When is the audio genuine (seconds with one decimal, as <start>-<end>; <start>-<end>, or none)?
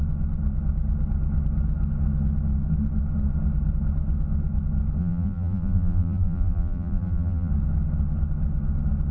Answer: 0.0-5.0; 7.5-9.1